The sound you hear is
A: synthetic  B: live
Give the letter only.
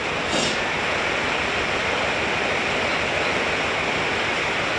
B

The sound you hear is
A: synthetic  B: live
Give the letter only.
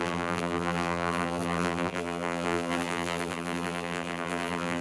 A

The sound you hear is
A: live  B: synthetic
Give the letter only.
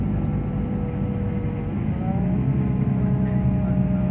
A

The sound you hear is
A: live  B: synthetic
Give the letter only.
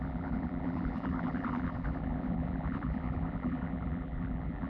B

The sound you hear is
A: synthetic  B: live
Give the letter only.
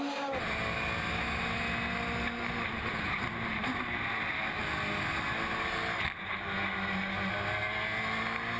B